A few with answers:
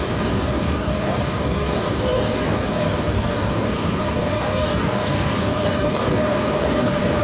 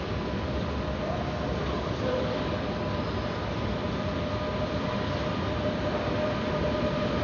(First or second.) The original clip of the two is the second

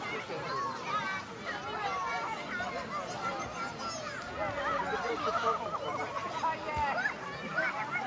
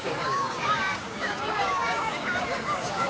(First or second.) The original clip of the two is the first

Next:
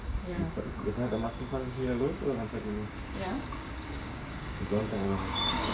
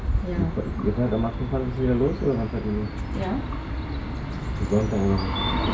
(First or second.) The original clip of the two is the second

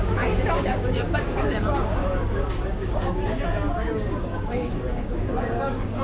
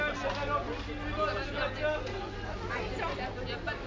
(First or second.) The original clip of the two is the second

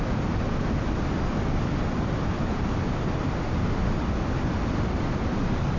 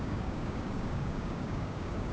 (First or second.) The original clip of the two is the first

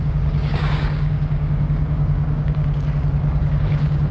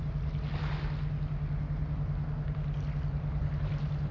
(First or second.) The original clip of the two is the second